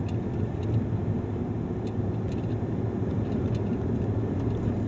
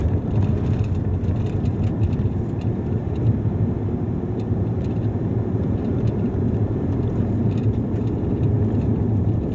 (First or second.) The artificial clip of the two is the second